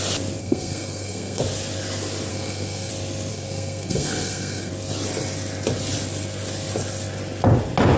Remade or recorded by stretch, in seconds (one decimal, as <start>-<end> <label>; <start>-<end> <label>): 0.0-0.4 recorded; 0.4-1.4 remade; 1.4-2.3 recorded; 2.3-2.9 remade; 2.9-3.3 recorded; 3.3-4.7 remade; 4.7-8.0 recorded